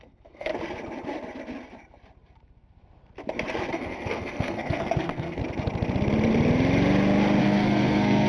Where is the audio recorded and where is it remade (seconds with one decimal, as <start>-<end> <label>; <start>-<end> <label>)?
0.0-0.5 remade; 0.5-3.7 recorded; 3.7-5.4 remade; 5.4-7.4 recorded; 7.4-8.3 remade